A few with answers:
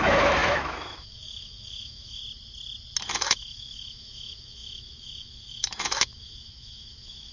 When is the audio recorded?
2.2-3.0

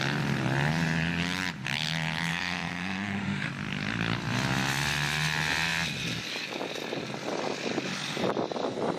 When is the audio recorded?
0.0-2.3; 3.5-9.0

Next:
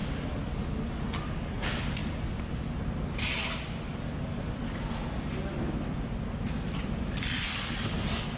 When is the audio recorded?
0.0-8.4